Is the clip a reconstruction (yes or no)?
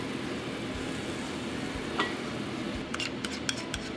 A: no